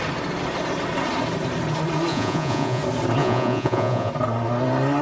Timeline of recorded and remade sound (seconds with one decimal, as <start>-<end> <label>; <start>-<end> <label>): 0.0-2.1 recorded; 2.1-2.8 remade; 2.8-3.2 recorded; 3.2-4.1 remade; 4.1-5.0 recorded